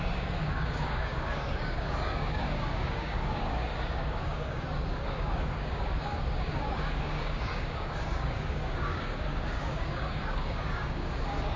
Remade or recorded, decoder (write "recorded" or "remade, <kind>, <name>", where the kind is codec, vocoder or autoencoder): remade, codec, DAC